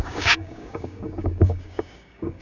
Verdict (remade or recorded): remade